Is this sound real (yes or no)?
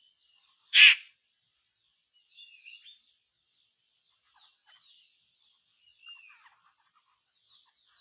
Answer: yes